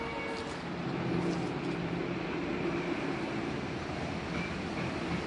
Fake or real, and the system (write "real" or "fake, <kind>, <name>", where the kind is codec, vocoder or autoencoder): real